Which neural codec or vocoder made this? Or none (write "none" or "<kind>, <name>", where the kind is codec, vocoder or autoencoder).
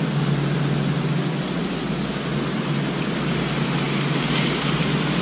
none